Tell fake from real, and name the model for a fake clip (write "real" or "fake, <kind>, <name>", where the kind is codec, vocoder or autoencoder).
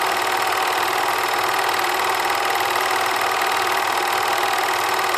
real